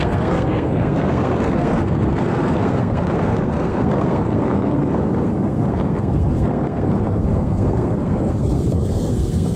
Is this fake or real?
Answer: fake